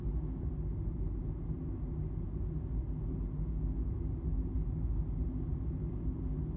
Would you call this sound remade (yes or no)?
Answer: no